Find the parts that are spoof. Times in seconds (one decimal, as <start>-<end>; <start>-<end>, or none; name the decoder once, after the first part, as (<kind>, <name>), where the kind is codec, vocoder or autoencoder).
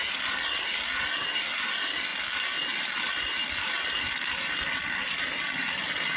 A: none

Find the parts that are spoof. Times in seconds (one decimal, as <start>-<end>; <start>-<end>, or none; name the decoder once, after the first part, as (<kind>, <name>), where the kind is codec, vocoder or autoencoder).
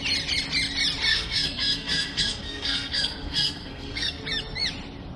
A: 1.1-4.2 (codec, SNAC)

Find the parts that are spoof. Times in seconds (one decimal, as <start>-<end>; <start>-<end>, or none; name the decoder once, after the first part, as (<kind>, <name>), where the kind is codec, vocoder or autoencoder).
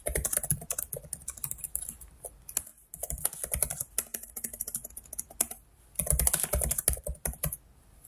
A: none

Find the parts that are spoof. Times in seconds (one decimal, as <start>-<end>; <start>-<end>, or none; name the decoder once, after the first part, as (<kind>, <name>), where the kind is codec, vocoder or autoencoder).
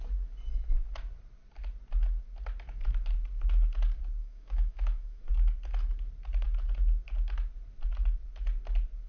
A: 4.2-5.2 (autoencoder, DAC-VAE)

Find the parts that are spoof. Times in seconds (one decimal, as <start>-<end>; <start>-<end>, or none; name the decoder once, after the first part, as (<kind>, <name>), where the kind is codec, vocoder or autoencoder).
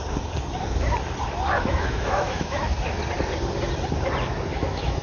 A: 1.6-2.7 (autoencoder, DAC-VAE); 4.5-5.0